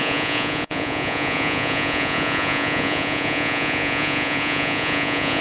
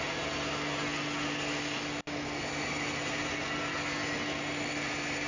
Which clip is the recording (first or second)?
second